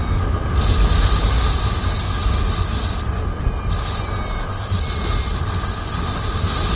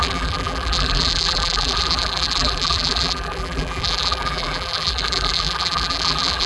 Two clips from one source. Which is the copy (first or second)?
second